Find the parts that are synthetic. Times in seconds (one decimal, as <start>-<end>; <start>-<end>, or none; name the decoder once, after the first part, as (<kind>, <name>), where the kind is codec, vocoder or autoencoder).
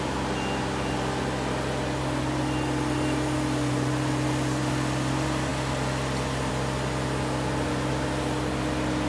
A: none